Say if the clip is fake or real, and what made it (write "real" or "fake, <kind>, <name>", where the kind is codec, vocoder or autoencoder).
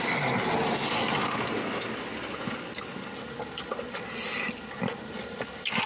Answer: real